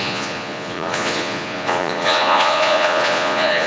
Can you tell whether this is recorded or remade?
remade